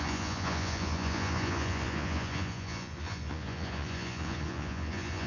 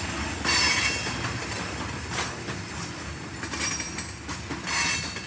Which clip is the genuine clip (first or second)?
second